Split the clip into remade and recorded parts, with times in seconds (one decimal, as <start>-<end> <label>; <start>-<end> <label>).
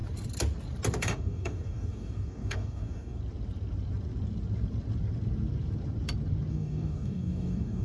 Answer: 0.0-1.0 recorded; 1.0-3.2 remade; 3.2-6.5 recorded; 6.5-7.8 remade